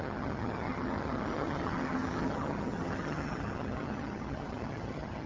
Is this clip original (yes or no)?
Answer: no